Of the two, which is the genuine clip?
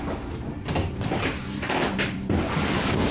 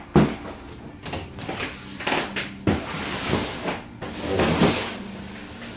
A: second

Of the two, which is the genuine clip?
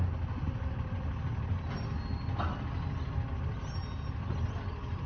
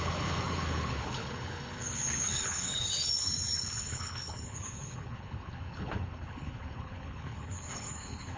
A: first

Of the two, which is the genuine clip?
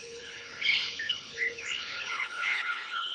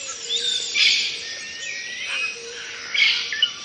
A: second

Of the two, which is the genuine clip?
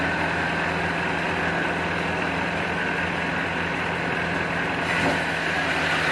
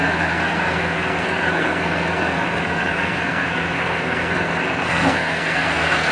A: first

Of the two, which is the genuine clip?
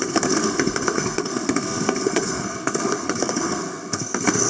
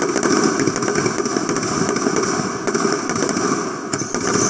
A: second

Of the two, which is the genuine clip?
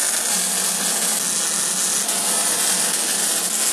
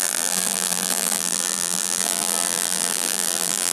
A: first